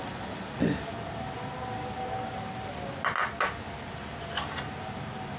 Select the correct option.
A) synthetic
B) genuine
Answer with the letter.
B